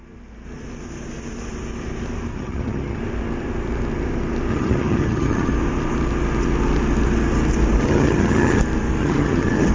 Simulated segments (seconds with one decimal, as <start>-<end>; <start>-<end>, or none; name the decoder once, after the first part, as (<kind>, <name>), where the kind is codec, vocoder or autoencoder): 2.3-3.0 (vocoder, HiFi-GAN); 4.5-5.5; 7.8-8.6; 9.0-9.7